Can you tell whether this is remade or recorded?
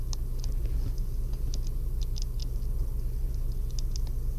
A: recorded